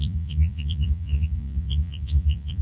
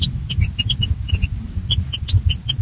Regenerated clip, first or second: first